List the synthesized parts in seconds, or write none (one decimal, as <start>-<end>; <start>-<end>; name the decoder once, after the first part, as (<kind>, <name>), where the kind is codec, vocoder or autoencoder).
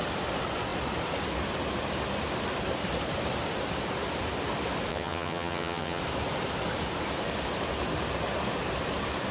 4.9-6.0 (vocoder, HiFi-GAN)